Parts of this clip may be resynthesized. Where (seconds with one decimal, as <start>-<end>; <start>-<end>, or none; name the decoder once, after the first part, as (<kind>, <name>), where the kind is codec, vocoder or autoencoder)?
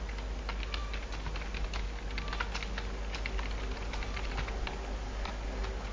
none